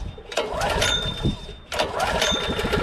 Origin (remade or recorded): recorded